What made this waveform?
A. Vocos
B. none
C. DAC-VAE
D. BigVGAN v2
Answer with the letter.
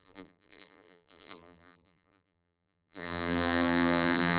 D